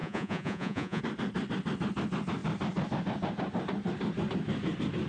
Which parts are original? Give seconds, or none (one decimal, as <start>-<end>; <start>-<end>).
1.0-5.1